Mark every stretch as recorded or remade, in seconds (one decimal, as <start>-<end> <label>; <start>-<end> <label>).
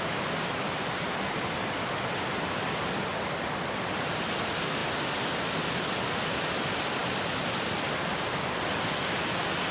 0.0-4.8 remade; 4.8-5.9 recorded; 5.9-9.7 remade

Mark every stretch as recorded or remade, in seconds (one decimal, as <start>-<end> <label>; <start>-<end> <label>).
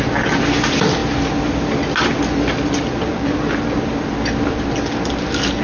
0.0-5.6 recorded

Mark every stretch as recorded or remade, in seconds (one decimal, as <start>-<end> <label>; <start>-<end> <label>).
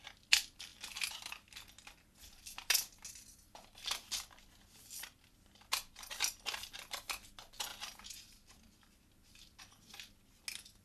0.0-10.8 recorded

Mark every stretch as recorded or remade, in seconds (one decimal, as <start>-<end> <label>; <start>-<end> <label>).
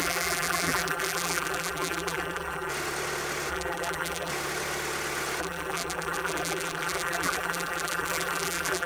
0.0-2.7 remade; 2.7-3.5 recorded; 3.5-4.3 remade; 4.3-5.4 recorded; 5.4-8.9 remade